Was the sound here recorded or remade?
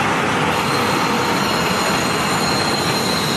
recorded